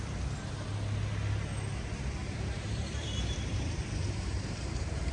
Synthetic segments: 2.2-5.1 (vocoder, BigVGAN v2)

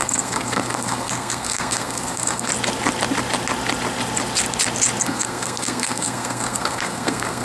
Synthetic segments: 0.0-2.5 (codec, SNAC); 5.0-7.4